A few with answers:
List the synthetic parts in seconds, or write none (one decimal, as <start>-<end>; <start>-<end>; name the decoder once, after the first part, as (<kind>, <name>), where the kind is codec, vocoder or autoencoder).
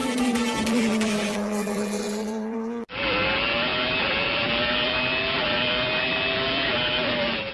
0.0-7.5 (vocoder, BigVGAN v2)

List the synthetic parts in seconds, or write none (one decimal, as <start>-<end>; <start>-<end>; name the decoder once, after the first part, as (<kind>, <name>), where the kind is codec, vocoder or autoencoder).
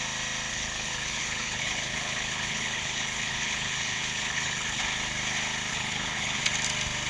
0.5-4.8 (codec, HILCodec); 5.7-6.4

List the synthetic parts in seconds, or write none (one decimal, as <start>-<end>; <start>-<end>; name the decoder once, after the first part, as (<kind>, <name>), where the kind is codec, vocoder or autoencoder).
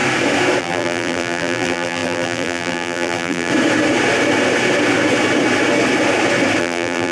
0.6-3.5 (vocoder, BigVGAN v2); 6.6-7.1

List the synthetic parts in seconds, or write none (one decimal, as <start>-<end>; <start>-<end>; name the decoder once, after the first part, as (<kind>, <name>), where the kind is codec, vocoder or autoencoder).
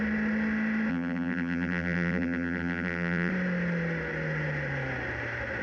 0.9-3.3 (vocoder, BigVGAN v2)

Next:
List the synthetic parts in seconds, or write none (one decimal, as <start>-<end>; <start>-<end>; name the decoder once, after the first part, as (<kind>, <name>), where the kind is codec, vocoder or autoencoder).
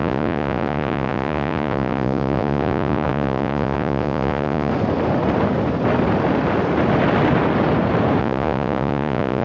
0.0-4.7 (vocoder, Vocos); 8.2-9.4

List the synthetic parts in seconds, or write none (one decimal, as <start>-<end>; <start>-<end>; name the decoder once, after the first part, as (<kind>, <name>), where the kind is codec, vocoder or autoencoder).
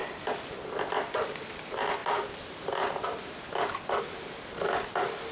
0.0-1.0 (vocoder, BigVGAN v2)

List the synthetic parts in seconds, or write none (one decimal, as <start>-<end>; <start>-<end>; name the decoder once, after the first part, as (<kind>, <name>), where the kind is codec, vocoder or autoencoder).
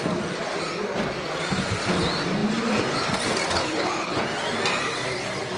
3.6-4.2 (codec, HILCodec)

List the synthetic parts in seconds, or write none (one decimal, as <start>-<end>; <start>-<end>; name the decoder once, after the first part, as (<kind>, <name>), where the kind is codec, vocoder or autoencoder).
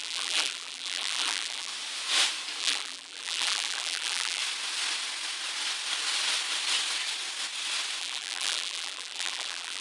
0.0-1.7 (vocoder, BigVGAN v2); 2.6-4.4; 8.0-9.8